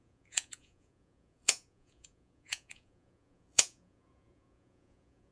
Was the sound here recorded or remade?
remade